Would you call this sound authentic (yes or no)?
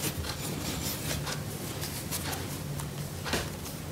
yes